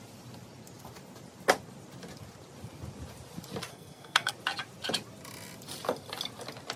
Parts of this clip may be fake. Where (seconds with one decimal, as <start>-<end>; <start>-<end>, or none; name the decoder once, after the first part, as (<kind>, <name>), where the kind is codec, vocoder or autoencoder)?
3.7-4.3 (codec, SNAC)